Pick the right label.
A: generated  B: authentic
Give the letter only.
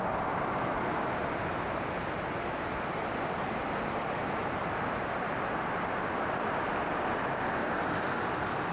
B